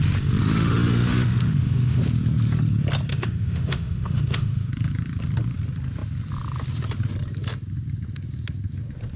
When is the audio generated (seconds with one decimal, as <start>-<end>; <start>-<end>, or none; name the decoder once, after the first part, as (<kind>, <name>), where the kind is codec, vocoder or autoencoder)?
0.4-2.0 (autoencoder, DAC-VAE); 3.1-4.7